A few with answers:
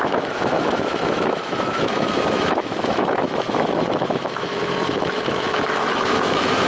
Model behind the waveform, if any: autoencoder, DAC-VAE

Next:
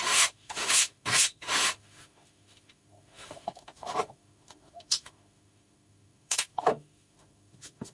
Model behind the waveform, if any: autoencoder, DAC-VAE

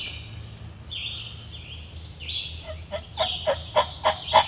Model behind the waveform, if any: none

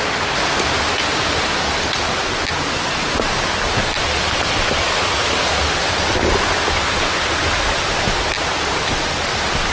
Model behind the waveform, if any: none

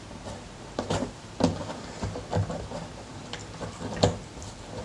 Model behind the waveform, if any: none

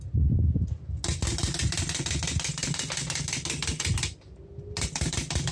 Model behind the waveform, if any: none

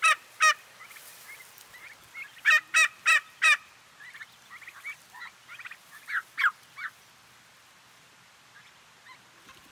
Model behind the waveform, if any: none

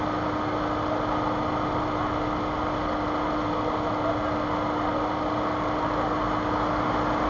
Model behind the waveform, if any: none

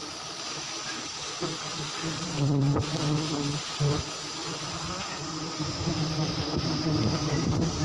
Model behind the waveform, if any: vocoder, BigVGAN v2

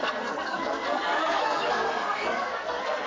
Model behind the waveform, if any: codec, SNAC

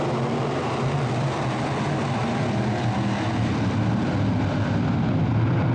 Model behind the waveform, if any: none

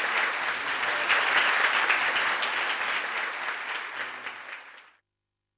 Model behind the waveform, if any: none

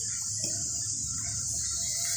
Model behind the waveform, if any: none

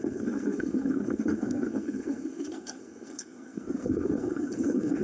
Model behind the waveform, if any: codec, SNAC